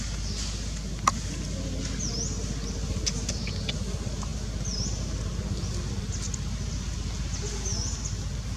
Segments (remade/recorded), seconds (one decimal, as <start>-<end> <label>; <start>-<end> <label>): 0.0-8.6 recorded